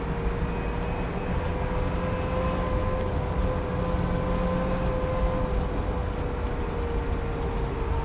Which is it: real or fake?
real